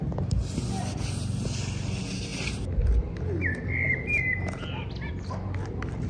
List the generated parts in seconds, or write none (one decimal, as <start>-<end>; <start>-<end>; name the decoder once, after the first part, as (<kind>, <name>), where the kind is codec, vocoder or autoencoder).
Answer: none